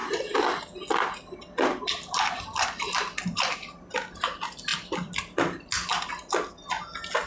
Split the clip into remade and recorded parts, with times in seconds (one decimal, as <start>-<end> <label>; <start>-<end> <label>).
0.0-7.3 recorded